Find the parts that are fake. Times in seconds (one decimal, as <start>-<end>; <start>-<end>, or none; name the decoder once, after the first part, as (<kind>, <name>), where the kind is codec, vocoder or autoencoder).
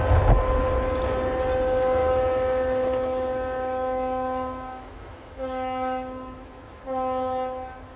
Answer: 2.0-6.8 (autoencoder, DAC-VAE)